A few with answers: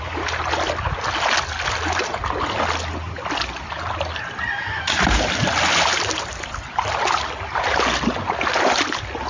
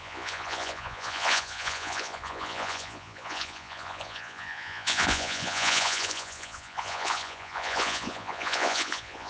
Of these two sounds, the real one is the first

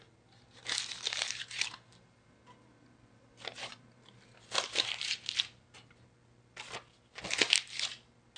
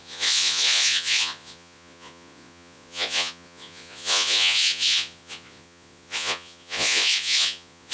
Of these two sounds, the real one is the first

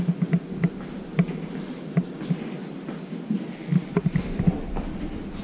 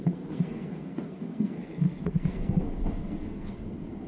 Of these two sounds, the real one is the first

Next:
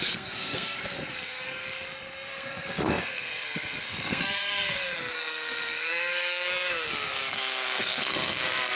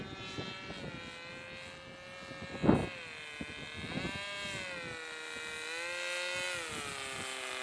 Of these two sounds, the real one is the second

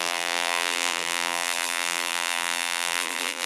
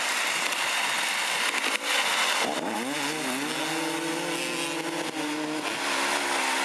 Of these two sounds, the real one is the second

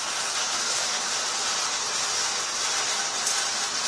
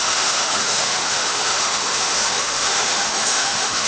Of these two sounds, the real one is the first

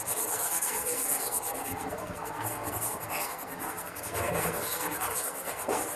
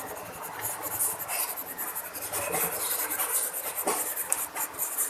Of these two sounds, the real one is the second